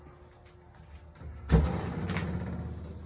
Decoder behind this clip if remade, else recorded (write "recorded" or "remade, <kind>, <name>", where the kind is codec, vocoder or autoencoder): recorded